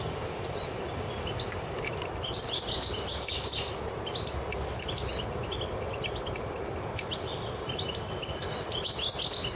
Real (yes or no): yes